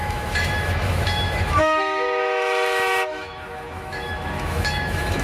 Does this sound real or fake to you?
fake